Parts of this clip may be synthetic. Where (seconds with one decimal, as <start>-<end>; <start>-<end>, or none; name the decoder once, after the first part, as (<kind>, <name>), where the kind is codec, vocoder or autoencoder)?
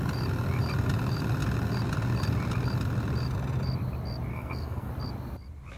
4.3-4.9 (codec, SNAC)